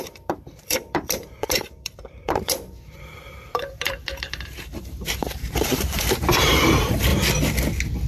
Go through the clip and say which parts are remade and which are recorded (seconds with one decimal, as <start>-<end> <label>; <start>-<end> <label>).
0.0-7.1 remade; 7.1-8.1 recorded